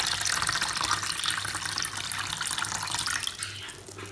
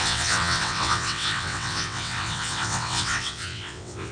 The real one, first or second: first